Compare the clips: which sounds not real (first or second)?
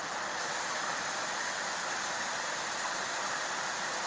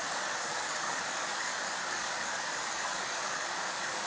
second